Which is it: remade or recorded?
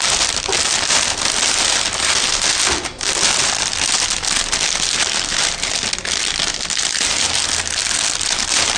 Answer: recorded